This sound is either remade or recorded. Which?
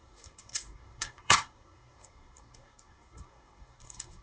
remade